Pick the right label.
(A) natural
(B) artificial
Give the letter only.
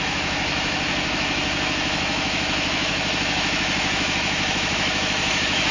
B